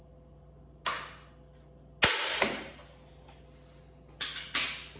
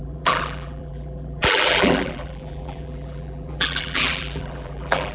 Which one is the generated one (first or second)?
second